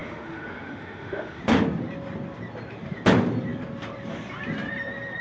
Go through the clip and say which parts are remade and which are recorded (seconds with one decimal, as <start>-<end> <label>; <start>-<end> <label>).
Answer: 0.0-1.4 remade; 1.4-5.2 recorded